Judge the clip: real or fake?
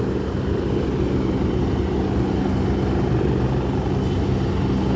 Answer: real